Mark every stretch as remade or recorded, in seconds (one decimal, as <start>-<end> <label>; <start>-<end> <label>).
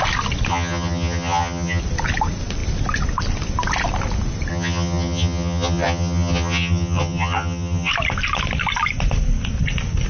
0.0-0.5 recorded; 0.5-1.8 remade; 1.8-4.5 recorded; 4.5-7.9 remade; 7.9-10.1 recorded